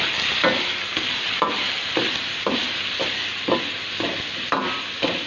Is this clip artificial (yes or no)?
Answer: no